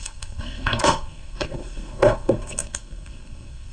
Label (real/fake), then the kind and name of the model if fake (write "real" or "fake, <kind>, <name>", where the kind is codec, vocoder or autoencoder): fake, codec, SNAC